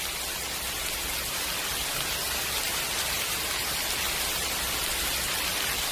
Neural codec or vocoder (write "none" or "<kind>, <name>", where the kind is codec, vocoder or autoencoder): none